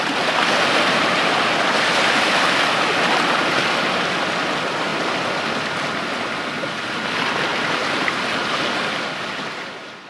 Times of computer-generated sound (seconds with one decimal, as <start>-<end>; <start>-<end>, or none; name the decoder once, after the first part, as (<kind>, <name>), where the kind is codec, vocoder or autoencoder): 7.5-8.2 (vocoder, BigVGAN v2)